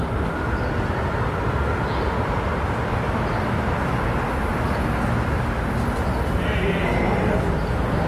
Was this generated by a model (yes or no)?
no